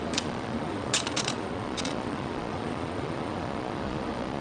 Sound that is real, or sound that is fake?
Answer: fake